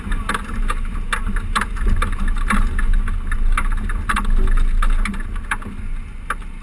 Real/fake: real